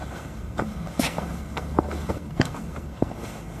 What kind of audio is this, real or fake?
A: fake